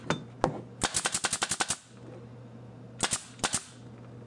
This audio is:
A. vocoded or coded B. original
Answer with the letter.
B